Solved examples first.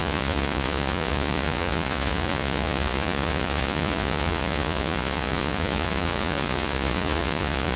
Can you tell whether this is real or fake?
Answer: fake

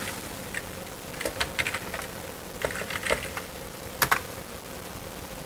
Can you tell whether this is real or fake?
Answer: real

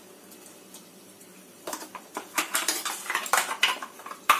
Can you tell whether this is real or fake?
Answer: fake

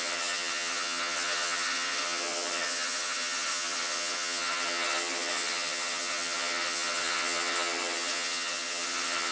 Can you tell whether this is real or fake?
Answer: fake